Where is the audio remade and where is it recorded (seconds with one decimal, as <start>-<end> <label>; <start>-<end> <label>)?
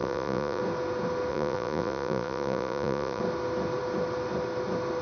0.0-0.6 remade; 0.6-1.3 recorded; 1.3-3.2 remade; 3.2-5.0 recorded